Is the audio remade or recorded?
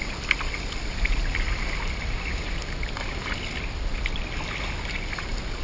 recorded